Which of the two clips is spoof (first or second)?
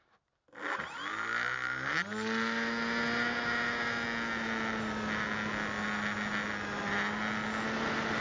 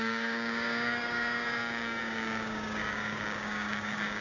second